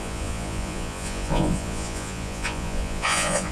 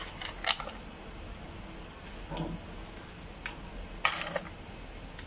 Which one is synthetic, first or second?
first